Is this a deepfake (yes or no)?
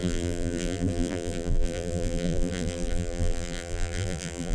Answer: yes